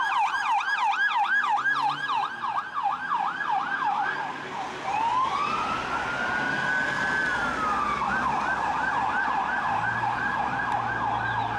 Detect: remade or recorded recorded